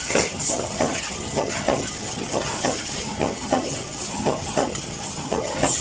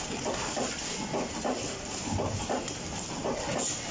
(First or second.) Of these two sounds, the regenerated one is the first